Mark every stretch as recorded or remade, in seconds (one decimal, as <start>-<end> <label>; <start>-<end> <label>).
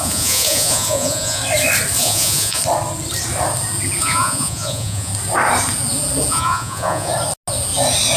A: 0.0-1.4 remade; 1.4-2.0 recorded; 2.0-2.6 remade; 2.6-4.0 recorded; 4.0-5.1 remade; 5.1-6.3 recorded; 6.3-7.1 remade; 7.1-8.2 recorded